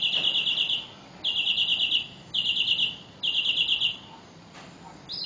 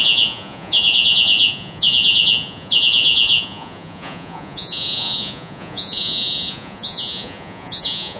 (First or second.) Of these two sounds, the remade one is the second